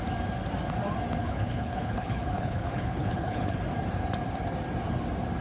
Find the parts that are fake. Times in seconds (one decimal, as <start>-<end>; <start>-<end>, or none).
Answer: 1.2-3.6